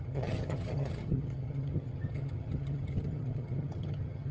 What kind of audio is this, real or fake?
fake